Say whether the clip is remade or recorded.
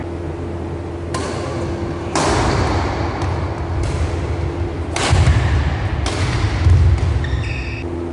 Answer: recorded